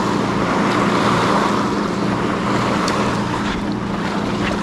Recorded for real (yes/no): yes